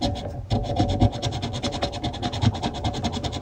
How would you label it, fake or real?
real